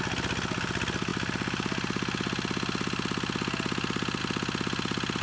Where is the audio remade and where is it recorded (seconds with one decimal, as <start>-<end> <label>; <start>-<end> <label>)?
0.0-5.2 recorded